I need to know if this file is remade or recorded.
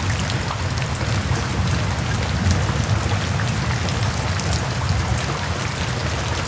recorded